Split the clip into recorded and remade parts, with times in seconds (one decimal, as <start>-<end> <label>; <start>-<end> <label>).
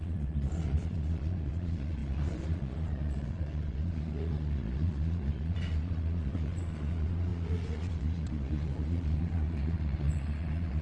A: 0.0-10.8 remade